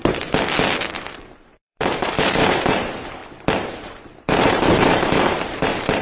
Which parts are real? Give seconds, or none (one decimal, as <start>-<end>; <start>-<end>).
0.0-0.9; 3.2-3.9